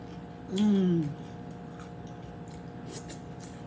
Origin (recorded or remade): recorded